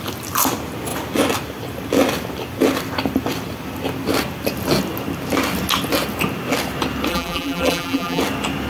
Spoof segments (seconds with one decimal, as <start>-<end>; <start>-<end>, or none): 7.1-8.2